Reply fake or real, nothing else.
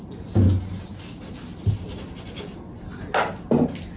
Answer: real